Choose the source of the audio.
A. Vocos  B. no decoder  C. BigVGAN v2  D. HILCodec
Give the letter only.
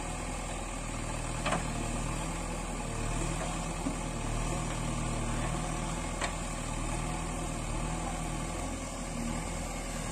B